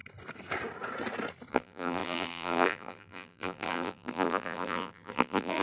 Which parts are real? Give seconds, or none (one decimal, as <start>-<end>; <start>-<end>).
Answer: 0.0-1.5